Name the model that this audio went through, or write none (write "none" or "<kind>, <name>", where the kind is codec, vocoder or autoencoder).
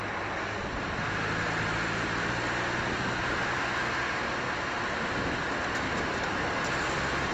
none